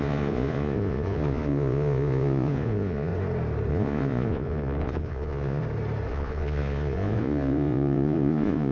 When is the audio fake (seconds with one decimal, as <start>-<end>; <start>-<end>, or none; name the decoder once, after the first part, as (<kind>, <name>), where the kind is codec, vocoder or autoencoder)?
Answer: 0.0-3.1 (vocoder, Vocos); 3.7-5.6; 6.1-8.7